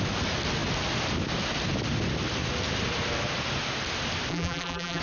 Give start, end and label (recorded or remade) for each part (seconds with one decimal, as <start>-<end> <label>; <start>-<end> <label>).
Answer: 0.0-4.3 recorded; 4.3-5.0 remade